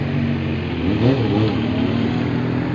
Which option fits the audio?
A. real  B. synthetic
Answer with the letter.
A